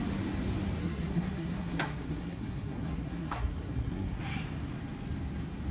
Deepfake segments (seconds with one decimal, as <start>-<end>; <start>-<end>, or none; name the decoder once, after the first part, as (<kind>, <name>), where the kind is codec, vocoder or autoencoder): 0.8-4.2 (codec, SNAC)